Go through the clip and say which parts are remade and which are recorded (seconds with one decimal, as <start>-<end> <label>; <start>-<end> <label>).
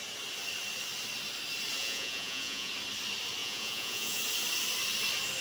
0.0-1.8 recorded; 1.8-2.7 remade; 2.7-3.4 recorded; 3.4-4.2 remade; 4.2-5.4 recorded